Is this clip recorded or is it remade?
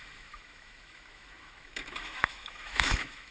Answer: remade